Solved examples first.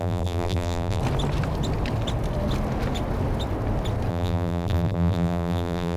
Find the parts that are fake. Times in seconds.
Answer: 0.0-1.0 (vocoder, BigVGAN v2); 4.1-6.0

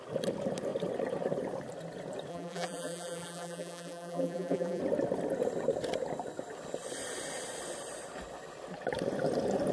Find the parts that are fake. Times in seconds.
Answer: 2.3-4.8 (vocoder, BigVGAN v2)

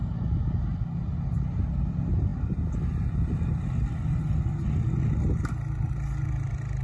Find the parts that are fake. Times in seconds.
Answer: none

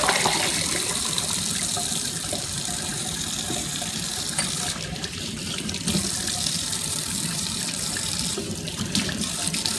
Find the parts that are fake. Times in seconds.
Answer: 0.0-9.8 (vocoder, BigVGAN v2)

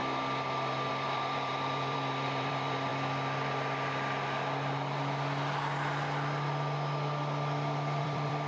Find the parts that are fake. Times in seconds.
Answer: 0.9-2.9 (vocoder, BigVGAN v2); 8.0-8.5

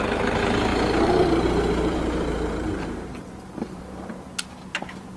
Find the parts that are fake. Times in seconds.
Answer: 0.7-3.8 (vocoder, BigVGAN v2)

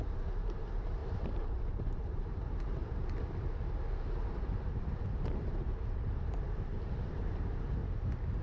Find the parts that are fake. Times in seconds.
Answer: 0.0-2.8 (vocoder, BigVGAN v2); 4.5-7.8

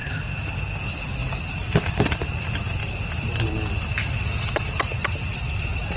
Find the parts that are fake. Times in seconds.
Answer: 1.2-2.1 (vocoder, BigVGAN v2); 2.8-5.3